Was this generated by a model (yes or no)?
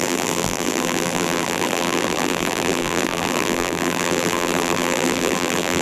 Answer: yes